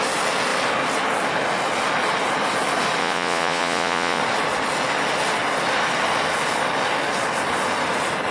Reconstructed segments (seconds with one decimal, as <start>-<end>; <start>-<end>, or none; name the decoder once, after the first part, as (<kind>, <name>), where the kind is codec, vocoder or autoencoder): 3.0-4.2 (vocoder, Vocos)